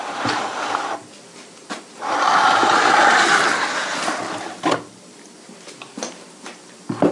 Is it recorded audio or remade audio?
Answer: recorded